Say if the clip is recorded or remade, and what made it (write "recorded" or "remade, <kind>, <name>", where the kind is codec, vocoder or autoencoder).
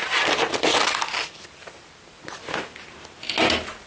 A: recorded